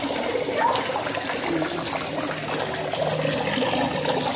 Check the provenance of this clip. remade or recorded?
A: recorded